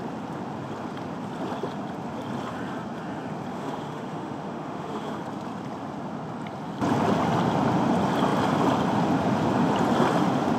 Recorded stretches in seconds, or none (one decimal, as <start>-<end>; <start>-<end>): 0.0-3.5; 5.2-10.6